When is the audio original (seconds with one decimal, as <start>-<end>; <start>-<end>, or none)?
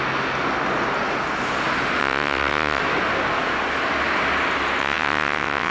0.0-2.0; 2.8-4.8